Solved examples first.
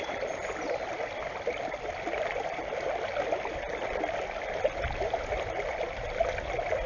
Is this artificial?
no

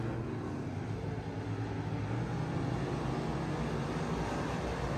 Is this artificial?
no